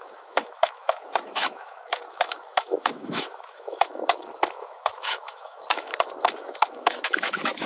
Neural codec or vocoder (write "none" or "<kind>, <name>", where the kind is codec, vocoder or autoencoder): autoencoder, DAC-VAE